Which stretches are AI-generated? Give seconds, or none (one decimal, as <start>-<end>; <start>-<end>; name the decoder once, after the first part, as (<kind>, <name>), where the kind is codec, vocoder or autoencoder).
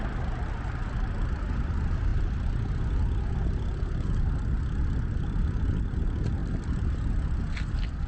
6.4-7.4 (vocoder, BigVGAN v2)